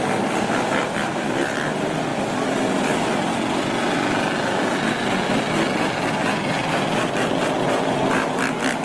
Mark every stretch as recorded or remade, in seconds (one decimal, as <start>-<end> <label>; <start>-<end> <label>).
0.0-8.8 recorded